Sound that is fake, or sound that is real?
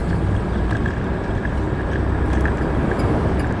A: real